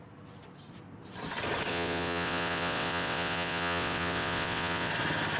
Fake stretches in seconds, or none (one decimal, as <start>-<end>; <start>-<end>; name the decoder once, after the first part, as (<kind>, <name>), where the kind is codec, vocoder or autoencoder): 1.7-4.9 (vocoder, WaveNeXt)